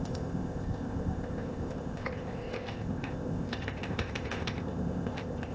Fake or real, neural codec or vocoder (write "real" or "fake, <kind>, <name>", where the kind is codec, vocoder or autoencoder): fake, codec, ZipCodec